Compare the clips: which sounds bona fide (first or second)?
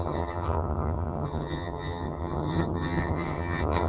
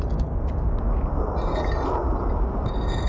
second